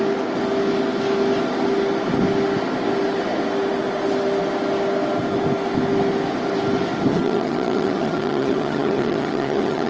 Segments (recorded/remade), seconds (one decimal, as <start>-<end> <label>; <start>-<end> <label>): 0.0-7.1 recorded; 7.1-9.9 remade